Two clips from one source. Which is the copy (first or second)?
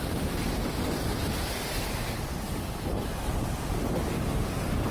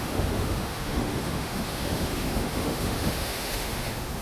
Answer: second